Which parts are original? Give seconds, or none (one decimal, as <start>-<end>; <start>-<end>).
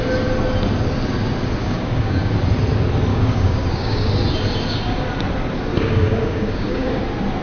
0.0-1.6; 2.3-3.1; 4.1-5.7; 7.0-7.4